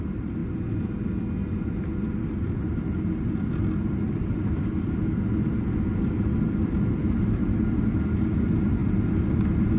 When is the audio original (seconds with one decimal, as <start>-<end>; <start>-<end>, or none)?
0.0-9.8